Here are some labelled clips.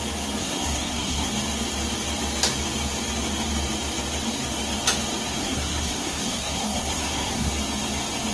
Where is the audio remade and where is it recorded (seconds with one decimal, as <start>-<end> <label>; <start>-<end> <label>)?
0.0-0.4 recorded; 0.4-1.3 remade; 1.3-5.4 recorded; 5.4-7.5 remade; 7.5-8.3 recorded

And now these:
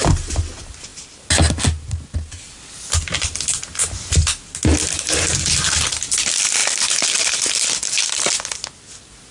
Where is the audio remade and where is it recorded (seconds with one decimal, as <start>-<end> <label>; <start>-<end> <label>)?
0.0-9.3 recorded

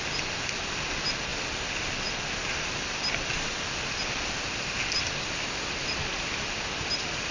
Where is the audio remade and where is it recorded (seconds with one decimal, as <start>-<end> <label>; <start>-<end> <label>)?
0.0-7.3 recorded